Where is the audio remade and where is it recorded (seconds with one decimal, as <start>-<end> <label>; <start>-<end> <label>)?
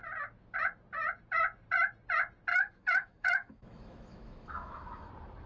0.0-2.5 recorded; 2.5-5.1 remade; 5.1-5.5 recorded